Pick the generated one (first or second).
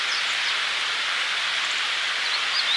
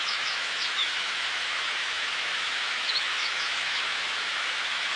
second